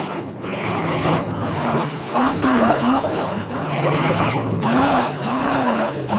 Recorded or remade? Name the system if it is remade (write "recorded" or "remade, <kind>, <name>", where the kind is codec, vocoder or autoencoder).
remade, codec, HILCodec